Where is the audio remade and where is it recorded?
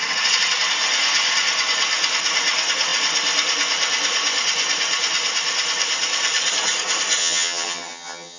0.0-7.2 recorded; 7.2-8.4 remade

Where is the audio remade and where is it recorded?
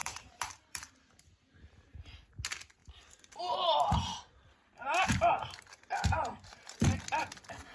0.0-0.9 remade; 0.9-2.8 recorded; 2.8-7.0 remade; 7.0-7.7 recorded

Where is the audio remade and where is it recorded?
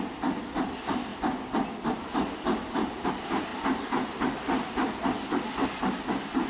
0.0-6.5 recorded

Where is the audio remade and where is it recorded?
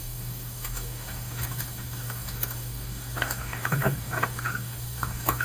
0.0-5.4 remade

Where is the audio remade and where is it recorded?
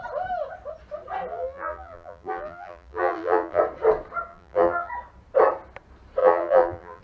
0.0-1.3 recorded; 1.3-3.6 remade; 3.6-4.3 recorded; 4.3-4.9 remade; 4.9-6.2 recorded; 6.2-7.0 remade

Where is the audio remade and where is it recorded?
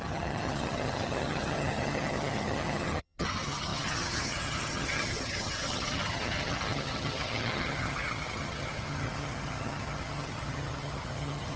0.0-11.6 remade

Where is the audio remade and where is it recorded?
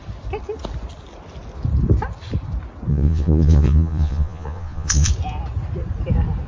0.0-2.9 recorded; 2.9-5.1 remade; 5.1-6.5 recorded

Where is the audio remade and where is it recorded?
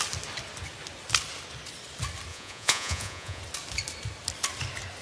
0.0-2.3 recorded; 2.3-3.4 remade; 3.4-5.0 recorded